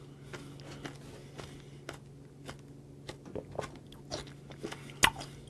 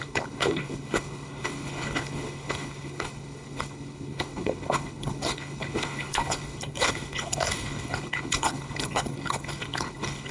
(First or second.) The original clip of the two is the first